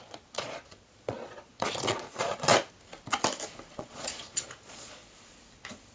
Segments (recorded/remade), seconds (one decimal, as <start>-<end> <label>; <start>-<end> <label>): 0.0-2.5 remade; 2.5-3.7 recorded; 3.7-5.0 remade; 5.0-5.9 recorded